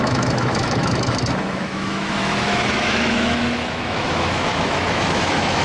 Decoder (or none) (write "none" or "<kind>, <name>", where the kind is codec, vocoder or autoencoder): autoencoder, DAC-VAE